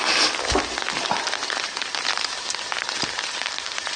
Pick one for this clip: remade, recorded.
recorded